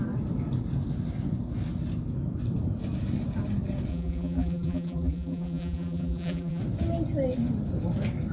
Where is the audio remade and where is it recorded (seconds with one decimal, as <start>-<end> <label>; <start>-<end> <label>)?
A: 0.0-3.9 recorded; 3.9-6.6 remade; 6.6-8.3 recorded